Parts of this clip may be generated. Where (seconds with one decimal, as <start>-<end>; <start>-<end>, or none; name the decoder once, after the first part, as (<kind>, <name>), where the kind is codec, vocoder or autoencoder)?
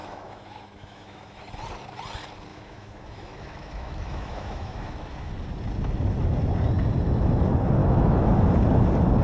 0.0-1.4 (autoencoder, DAC-VAE); 2.5-5.3; 7.8-8.3